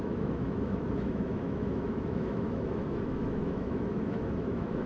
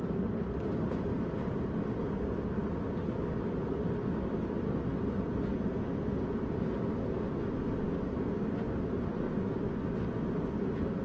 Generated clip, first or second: first